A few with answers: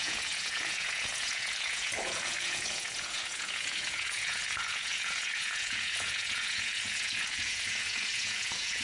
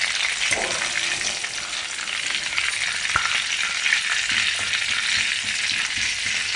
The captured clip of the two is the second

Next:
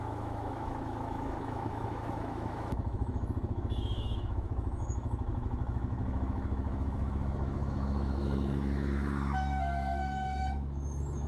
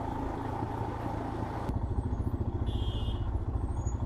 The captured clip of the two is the second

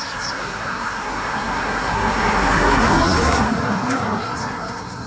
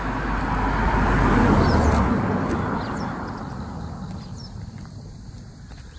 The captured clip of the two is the second